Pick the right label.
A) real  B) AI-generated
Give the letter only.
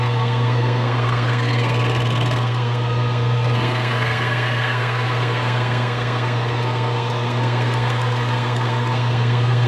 B